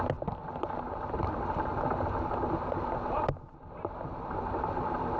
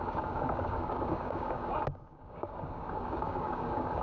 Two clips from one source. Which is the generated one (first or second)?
second